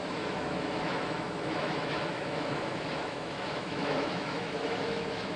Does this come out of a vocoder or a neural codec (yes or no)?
yes